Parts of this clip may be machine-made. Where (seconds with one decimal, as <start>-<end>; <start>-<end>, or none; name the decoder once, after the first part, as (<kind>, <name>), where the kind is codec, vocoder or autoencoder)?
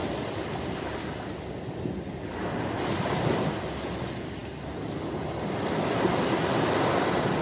0.0-4.4 (vocoder, BigVGAN v2); 5.6-7.4